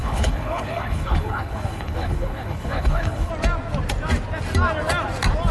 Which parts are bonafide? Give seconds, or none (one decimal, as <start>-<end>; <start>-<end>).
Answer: 3.3-5.5